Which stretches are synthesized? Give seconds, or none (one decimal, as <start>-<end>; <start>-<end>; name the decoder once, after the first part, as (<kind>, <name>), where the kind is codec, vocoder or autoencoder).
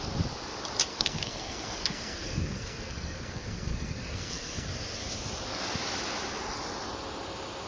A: 0.9-4.7 (codec, SNAC)